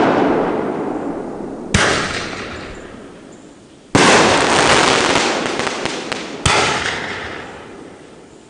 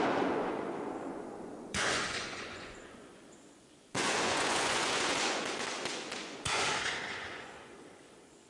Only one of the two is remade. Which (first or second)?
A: second